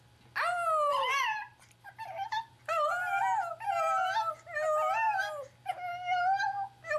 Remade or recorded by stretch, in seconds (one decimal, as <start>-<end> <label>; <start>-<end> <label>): 0.0-0.9 recorded; 0.9-3.2 remade; 3.2-7.0 recorded